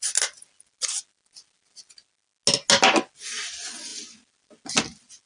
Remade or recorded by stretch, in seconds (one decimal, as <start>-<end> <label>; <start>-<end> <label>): 0.0-5.3 recorded